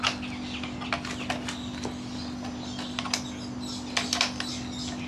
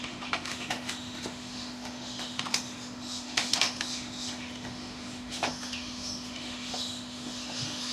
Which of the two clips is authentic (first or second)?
first